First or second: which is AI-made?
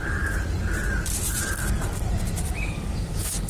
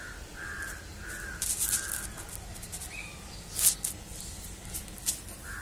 first